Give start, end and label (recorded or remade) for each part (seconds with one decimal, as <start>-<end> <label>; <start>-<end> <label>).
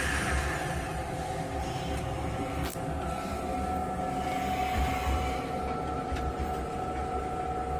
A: 0.0-7.8 recorded